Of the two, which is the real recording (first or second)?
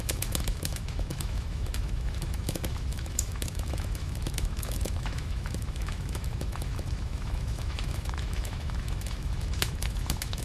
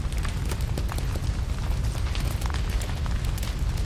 second